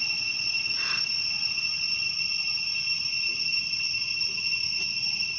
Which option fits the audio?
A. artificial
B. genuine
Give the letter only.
B